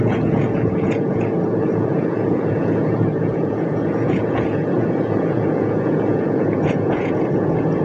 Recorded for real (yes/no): no